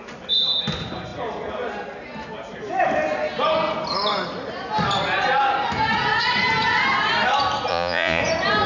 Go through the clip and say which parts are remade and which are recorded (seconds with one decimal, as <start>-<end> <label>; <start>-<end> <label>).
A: 0.0-7.7 recorded; 7.7-8.2 remade; 8.2-8.7 recorded